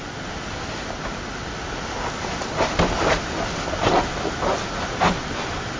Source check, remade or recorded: recorded